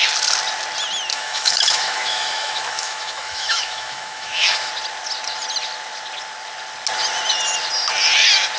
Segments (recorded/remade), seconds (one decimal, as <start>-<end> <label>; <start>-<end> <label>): 0.0-1.1 recorded; 1.1-4.7 remade; 4.7-8.6 recorded